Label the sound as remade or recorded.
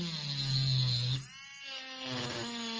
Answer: recorded